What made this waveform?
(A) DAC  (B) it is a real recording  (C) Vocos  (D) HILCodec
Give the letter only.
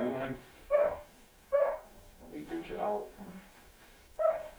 A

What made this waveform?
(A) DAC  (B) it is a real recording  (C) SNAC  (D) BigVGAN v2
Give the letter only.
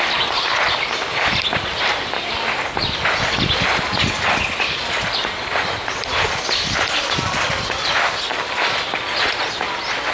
B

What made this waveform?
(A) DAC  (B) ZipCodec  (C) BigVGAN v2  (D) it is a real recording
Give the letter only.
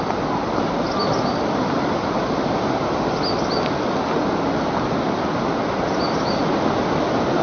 D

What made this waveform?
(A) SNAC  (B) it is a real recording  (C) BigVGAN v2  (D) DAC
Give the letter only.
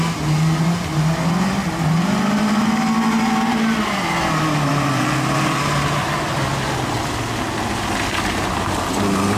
B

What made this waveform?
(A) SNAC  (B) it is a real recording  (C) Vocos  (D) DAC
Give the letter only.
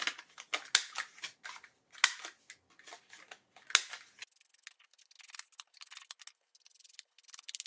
B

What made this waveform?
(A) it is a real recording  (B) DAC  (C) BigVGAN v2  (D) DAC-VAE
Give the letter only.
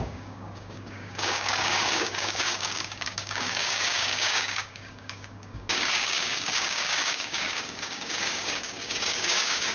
B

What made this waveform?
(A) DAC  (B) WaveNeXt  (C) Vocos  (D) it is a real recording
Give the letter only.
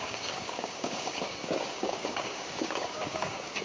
A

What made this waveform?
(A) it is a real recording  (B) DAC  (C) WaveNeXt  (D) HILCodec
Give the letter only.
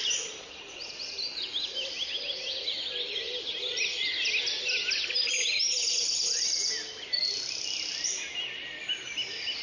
A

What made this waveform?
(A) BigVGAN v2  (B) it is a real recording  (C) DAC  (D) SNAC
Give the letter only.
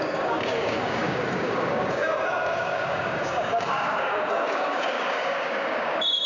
C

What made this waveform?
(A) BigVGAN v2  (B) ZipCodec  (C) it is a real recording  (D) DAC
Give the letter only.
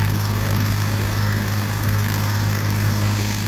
D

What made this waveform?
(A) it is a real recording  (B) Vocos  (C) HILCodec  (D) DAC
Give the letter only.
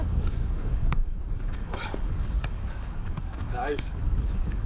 D